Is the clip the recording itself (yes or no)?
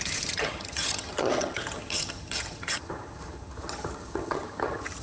no